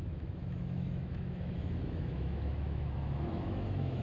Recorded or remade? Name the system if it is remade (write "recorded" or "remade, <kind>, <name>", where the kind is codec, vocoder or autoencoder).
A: remade, autoencoder, DAC-VAE